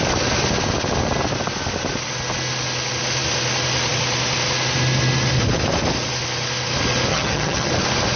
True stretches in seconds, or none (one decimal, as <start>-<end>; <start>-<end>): 0.0-7.1; 7.7-8.2